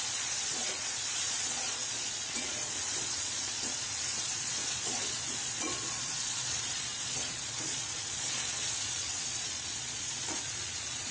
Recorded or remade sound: remade